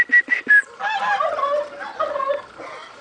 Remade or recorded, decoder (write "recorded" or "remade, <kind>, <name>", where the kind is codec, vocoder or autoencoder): recorded